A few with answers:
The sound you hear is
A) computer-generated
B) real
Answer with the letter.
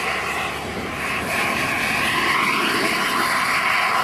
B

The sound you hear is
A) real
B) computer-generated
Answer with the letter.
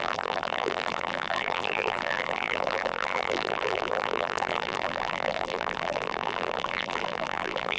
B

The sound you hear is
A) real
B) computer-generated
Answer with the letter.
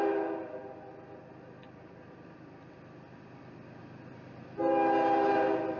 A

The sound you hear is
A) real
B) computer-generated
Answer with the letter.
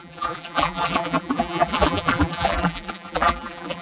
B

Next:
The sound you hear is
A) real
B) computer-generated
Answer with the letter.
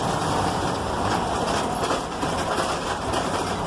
B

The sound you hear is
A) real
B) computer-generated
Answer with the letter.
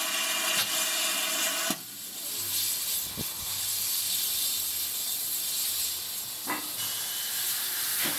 A